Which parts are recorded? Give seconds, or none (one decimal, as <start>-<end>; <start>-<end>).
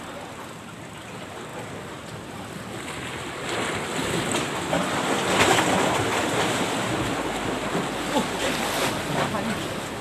0.0-10.0